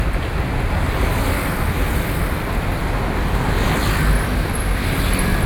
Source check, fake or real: real